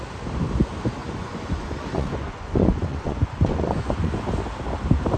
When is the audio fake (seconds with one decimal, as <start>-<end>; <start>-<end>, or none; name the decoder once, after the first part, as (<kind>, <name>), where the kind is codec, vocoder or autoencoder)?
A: 1.0-4.1 (vocoder, Vocos)